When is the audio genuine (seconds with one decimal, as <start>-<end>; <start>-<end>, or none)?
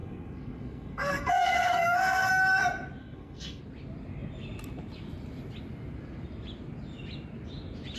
2.3-3.0; 3.6-8.0